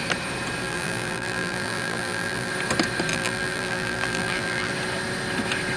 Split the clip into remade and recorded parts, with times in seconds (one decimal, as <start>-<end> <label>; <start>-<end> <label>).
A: 0.0-0.6 recorded; 0.6-2.5 remade; 2.5-3.1 recorded; 3.1-4.7 remade; 4.7-5.8 recorded